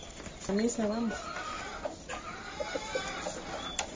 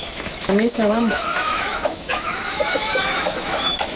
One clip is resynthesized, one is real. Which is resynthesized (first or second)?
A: second